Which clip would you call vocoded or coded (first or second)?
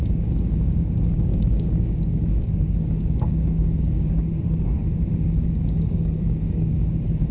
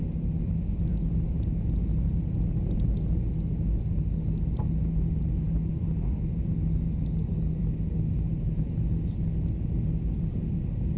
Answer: first